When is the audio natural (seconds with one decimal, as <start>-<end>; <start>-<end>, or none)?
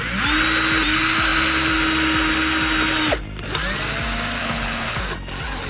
0.0-4.4; 5.0-5.7